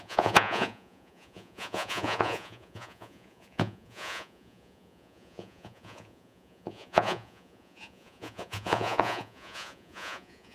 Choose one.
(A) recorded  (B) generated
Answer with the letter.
B